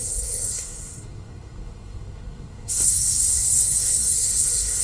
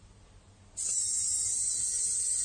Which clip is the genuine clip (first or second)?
second